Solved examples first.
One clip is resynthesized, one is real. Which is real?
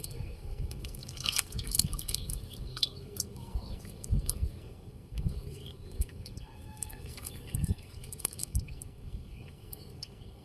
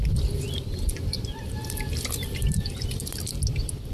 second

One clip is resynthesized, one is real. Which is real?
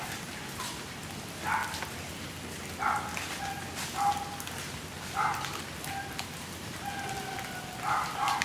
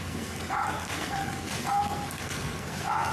first